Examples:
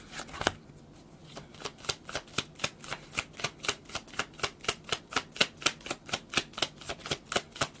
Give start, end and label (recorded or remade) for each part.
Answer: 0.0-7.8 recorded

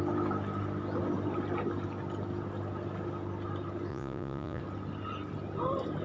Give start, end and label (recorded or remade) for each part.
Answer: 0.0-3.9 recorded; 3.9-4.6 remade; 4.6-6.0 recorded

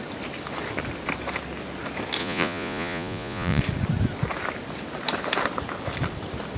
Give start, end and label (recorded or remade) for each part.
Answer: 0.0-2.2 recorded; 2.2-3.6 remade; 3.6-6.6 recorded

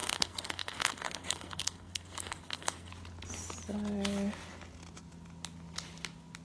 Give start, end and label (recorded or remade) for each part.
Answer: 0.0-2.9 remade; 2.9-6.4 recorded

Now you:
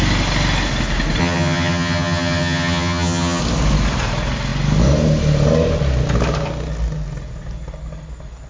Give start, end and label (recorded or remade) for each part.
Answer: 0.0-1.2 recorded; 1.2-3.4 remade; 3.4-8.5 recorded

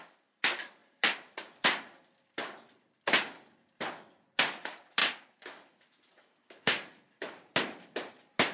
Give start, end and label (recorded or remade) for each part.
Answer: 0.0-8.5 recorded